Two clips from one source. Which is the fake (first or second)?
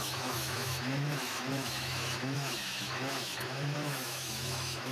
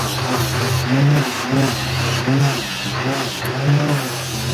first